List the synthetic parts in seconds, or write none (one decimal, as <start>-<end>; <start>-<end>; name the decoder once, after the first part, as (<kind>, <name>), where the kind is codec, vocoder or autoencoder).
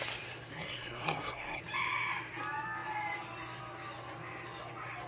0.5-1.6 (codec, SNAC)